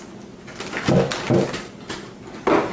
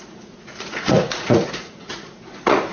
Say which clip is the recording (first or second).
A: first